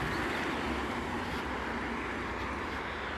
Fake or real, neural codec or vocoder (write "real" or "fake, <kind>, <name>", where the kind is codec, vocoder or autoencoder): real